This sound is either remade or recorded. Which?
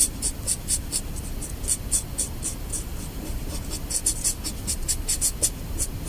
recorded